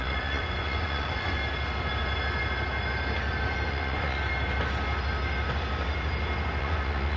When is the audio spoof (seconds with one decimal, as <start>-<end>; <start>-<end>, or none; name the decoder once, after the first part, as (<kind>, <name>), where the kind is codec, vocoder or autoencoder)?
0.0-1.4 (vocoder, Vocos); 3.7-4.2; 6.6-7.2